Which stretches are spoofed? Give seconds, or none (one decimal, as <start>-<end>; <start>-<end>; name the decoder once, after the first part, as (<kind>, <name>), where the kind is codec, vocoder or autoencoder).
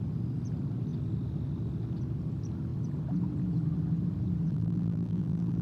4.5-5.6 (vocoder, BigVGAN v2)